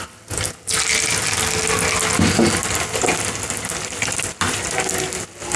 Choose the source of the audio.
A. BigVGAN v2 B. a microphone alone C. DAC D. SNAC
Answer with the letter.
B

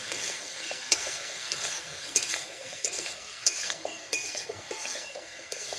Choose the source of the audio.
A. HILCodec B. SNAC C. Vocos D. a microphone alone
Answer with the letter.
B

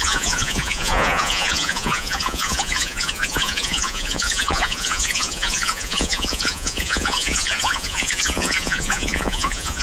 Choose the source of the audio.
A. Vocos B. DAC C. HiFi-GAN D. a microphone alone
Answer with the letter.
A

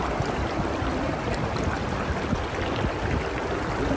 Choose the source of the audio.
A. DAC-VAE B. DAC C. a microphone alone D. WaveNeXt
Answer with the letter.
C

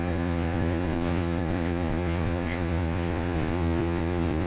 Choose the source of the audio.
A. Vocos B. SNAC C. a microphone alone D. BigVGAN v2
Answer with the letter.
A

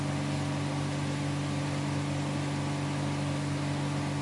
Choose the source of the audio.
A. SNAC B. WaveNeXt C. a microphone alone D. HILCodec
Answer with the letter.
C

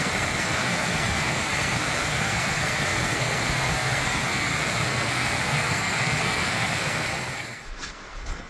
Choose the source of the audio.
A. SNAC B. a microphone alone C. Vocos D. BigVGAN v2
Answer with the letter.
A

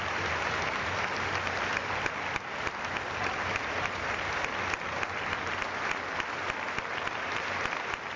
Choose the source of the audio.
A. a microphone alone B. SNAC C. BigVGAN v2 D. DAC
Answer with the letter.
A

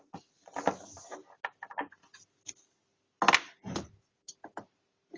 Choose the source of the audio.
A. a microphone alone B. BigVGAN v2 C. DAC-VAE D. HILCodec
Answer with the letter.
A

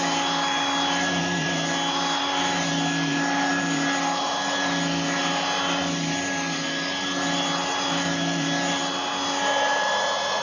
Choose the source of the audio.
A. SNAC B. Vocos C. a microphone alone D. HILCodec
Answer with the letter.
C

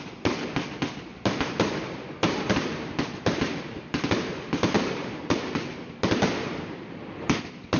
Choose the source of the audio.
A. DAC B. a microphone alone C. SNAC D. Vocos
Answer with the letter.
B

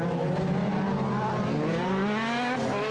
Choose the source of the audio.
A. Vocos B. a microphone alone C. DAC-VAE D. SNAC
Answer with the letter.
B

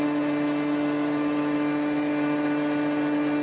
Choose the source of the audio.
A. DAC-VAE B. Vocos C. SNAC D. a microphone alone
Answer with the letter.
D